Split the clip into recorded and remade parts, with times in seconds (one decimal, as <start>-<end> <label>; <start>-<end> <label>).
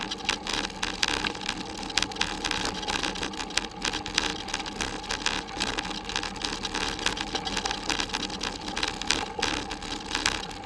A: 0.0-10.7 recorded